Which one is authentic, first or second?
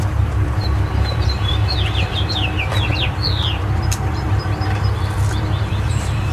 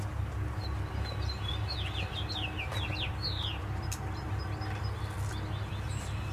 second